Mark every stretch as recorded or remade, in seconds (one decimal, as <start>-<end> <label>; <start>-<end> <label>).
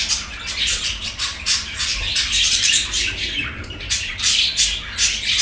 0.0-1.3 recorded; 1.3-4.5 remade; 4.5-5.4 recorded